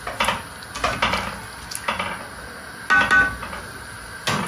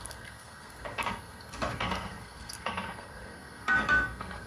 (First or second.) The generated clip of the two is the second